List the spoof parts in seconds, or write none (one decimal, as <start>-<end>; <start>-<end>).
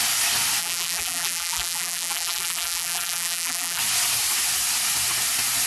0.6-3.8